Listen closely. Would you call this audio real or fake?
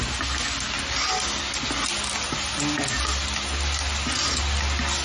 real